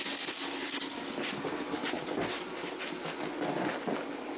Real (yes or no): yes